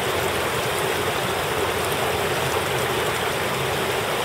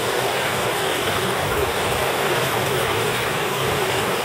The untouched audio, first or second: first